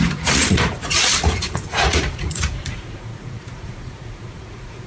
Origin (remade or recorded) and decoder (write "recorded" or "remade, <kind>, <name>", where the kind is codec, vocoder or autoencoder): remade, vocoder, Vocos